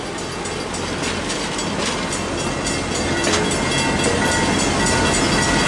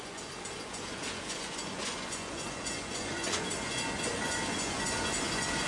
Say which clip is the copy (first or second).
second